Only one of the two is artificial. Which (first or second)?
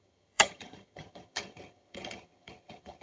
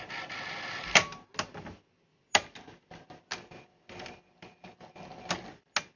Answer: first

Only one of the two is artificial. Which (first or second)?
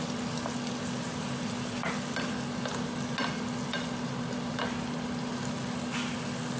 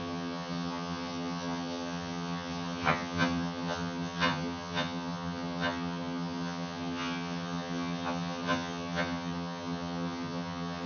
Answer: second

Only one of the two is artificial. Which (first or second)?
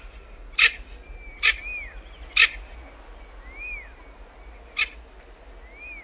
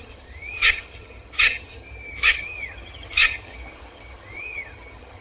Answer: second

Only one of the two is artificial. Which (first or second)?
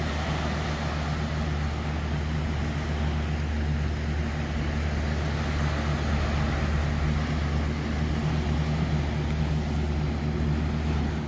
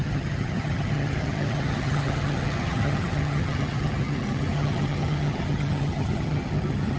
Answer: second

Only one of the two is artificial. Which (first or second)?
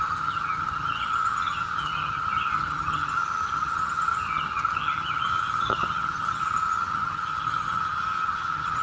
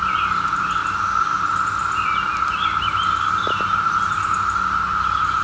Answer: first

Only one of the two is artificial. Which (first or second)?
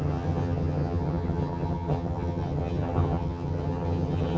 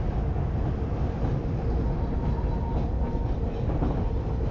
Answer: first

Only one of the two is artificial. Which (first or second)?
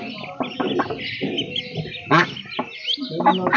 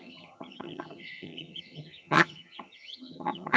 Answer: second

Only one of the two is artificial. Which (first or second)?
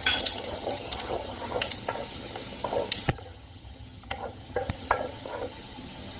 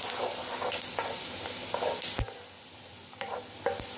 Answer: first